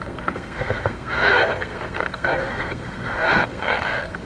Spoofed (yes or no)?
yes